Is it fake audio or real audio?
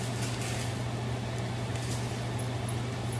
real